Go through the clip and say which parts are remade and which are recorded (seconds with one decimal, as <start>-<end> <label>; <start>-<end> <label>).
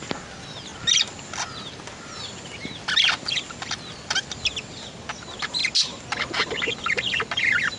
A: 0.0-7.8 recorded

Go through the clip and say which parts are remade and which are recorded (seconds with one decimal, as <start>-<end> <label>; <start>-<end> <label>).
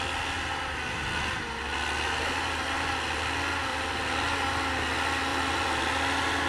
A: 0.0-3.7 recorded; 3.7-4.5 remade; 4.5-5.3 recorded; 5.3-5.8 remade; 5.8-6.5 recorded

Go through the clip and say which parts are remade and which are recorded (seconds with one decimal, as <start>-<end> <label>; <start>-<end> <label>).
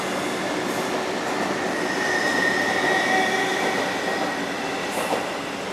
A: 0.0-5.7 recorded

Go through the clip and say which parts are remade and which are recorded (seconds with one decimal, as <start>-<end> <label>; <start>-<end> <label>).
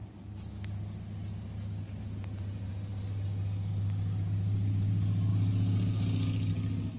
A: 0.0-7.0 recorded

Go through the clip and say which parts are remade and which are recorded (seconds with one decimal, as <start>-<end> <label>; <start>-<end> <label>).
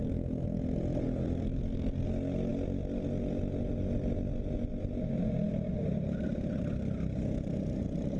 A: 0.0-8.2 recorded